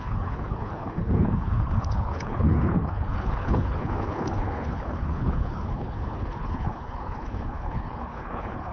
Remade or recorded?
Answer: remade